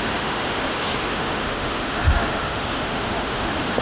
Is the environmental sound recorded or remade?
remade